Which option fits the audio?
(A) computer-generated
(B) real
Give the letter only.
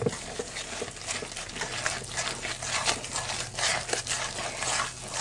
B